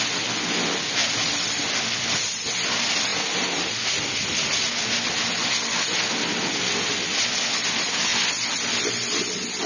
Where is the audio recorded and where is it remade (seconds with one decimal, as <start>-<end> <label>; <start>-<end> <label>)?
0.0-9.7 recorded